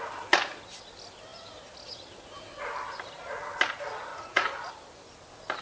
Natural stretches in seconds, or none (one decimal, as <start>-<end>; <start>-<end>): 0.0-4.1; 4.7-5.6